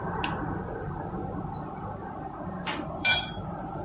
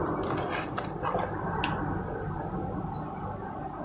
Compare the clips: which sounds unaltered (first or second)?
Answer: second